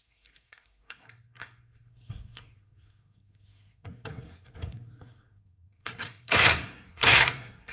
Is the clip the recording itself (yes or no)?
no